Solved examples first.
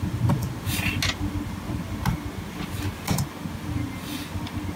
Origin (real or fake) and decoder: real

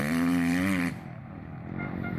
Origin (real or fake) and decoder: fake, vocoder, BigVGAN v2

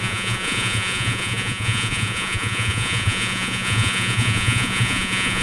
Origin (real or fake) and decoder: fake, vocoder, Vocos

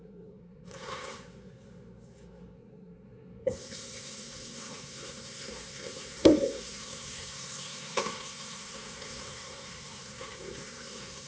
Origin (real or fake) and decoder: fake, codec, SNAC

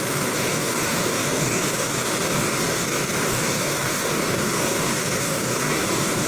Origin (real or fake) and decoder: fake, codec, DAC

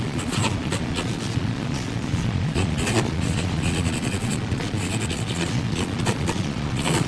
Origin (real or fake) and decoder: fake, vocoder, Vocos